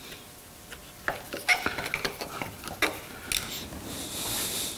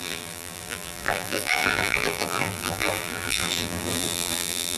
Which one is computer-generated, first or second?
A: second